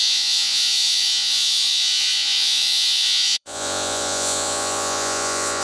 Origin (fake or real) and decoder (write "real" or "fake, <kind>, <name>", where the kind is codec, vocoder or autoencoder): fake, vocoder, Vocos